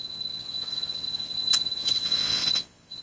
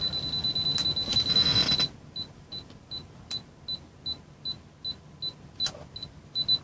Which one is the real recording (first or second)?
second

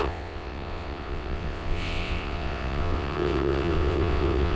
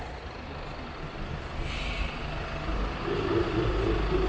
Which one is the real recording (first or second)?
second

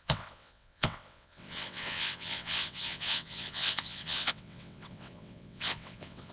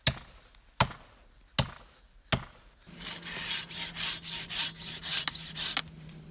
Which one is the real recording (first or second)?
second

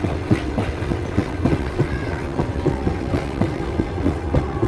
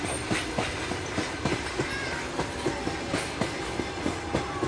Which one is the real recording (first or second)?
second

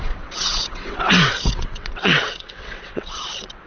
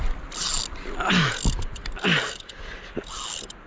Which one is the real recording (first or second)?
second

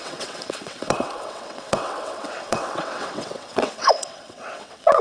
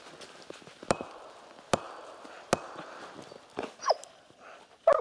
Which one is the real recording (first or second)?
second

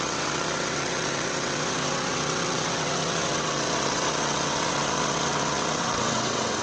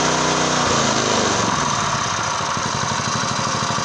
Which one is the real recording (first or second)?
second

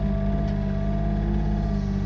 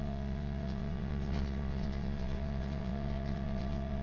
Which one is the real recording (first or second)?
first